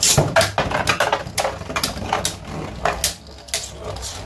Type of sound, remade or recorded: recorded